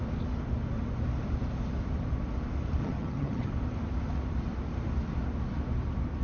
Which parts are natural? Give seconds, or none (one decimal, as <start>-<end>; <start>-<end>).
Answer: 0.0-2.8; 3.5-6.2